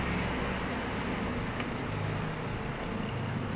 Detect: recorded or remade recorded